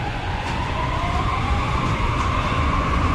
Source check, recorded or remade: remade